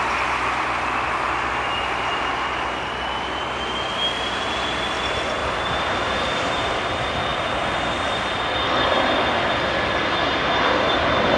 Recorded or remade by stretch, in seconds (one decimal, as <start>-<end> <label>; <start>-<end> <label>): 0.0-5.4 recorded; 5.4-6.7 remade; 6.7-11.4 recorded